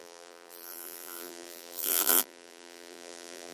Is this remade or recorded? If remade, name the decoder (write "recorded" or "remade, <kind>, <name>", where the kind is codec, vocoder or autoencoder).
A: remade, vocoder, BigVGAN v2